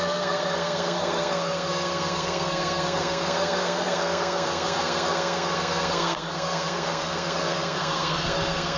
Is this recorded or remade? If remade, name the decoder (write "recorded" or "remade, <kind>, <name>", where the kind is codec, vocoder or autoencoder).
remade, codec, SNAC